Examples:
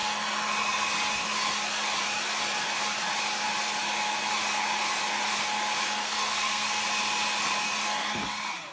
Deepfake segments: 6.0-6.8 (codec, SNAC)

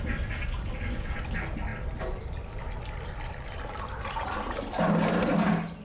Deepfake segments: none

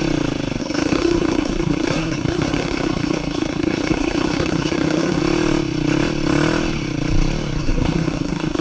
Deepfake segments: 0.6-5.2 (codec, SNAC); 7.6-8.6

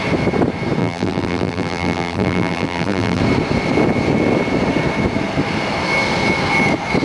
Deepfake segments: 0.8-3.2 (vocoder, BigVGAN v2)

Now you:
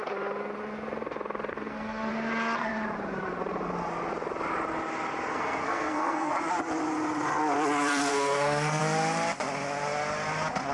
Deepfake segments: 1.5-2.1 (codec, SNAC); 5.3-6.3; 8.1-8.8

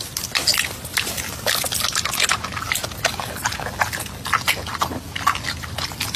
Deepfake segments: none

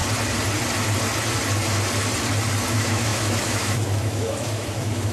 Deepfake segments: 2.7-5.1 (autoencoder, DAC-VAE)